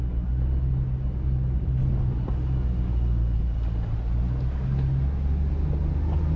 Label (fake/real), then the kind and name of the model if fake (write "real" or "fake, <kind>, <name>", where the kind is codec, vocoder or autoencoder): real